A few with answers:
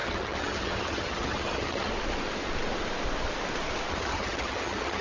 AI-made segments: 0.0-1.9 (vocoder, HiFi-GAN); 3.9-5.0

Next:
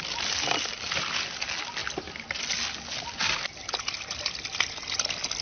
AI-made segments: none

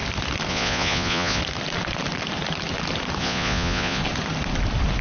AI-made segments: 0.5-1.4 (vocoder, Vocos); 3.2-4.0

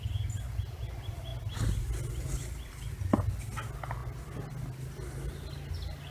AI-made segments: none

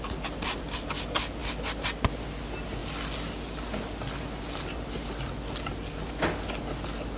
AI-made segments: none

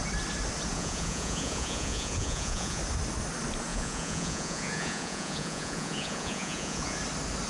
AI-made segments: 0.7-2.8 (vocoder, Vocos); 3.7-7.0